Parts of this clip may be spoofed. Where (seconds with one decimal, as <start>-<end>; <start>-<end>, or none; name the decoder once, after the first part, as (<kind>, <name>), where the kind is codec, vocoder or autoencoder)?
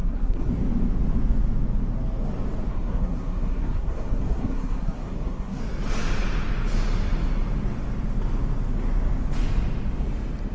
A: 0.0-0.5 (codec, SNAC); 2.7-5.6